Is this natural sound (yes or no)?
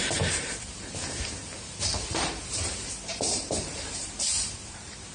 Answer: no